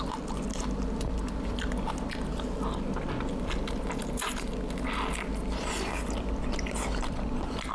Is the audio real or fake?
real